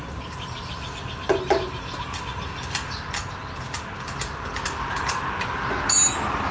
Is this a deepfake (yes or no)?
no